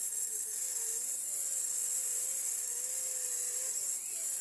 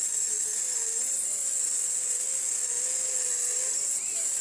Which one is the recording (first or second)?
second